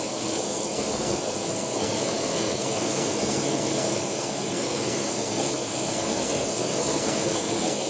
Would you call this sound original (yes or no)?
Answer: no